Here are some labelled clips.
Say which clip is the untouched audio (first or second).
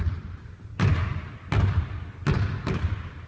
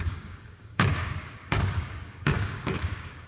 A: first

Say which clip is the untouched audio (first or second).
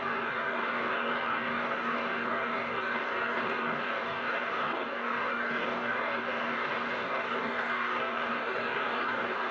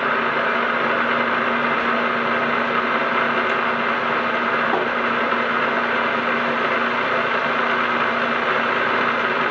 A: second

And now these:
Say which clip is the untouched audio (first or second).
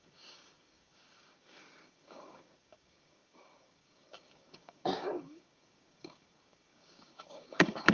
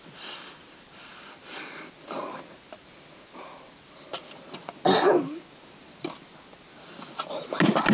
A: second